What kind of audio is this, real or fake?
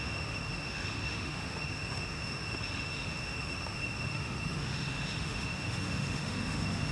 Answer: fake